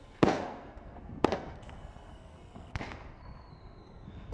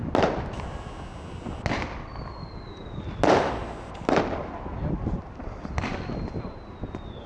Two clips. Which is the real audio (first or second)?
second